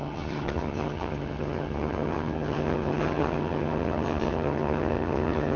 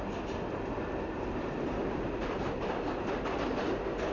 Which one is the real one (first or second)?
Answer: second